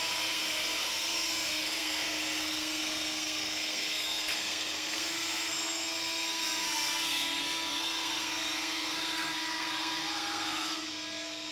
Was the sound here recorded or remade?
remade